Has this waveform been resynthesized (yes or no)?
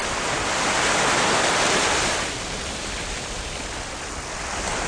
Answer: no